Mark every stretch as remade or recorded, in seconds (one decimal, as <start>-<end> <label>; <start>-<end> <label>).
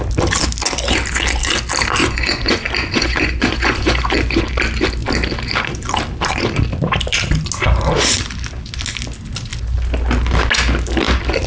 0.0-2.0 recorded; 2.0-4.4 remade; 4.4-11.5 recorded